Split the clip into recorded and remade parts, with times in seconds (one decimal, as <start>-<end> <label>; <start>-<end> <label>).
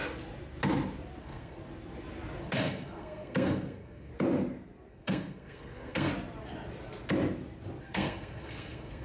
0.0-1.2 recorded; 1.2-1.6 remade; 1.6-2.4 recorded; 2.4-4.1 remade; 4.1-4.9 recorded; 4.9-6.1 remade; 6.1-7.8 recorded; 7.8-9.0 remade